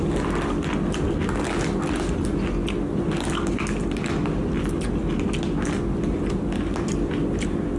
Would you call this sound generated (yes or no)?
no